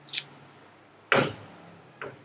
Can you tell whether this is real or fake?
real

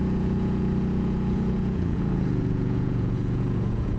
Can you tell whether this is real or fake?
fake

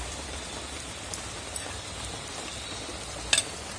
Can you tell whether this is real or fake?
real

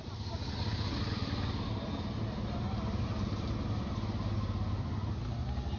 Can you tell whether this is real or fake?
real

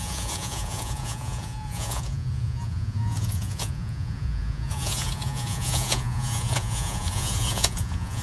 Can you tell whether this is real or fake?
fake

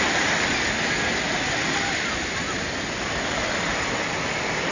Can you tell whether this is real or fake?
real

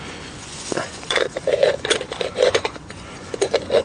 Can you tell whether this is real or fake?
fake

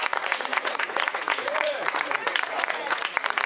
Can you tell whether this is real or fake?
fake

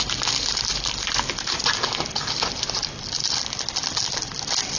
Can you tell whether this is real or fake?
real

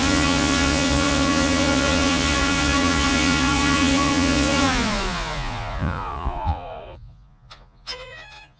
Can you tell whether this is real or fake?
fake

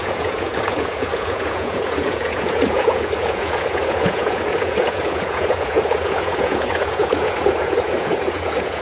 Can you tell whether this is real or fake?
fake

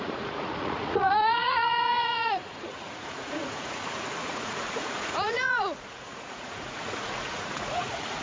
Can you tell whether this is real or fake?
fake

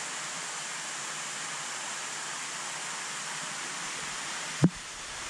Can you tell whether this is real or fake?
real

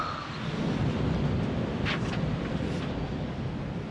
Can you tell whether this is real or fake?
real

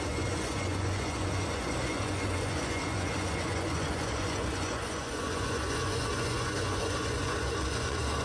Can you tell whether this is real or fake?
fake